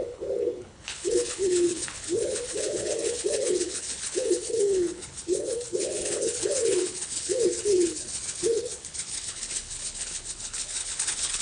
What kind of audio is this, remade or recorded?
remade